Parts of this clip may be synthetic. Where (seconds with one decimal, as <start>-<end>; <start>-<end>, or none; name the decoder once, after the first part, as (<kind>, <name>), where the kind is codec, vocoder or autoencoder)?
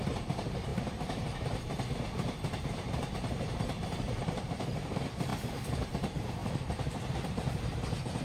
0.0-8.2 (vocoder, BigVGAN v2)